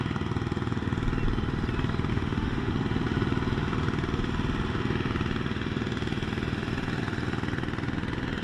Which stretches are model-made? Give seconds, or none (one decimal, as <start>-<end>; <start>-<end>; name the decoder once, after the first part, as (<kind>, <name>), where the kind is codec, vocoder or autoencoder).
2.1-2.7 (autoencoder, DAC-VAE)